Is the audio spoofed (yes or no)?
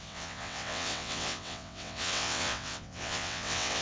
yes